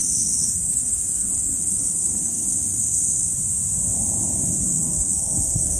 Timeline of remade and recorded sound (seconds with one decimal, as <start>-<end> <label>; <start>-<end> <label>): 0.0-3.3 remade; 3.3-4.7 recorded; 4.7-5.8 remade